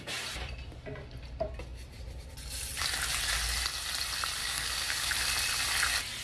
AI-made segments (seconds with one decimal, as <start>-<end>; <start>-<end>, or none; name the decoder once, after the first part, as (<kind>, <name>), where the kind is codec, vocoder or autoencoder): 4.4-5.1 (codec, DAC)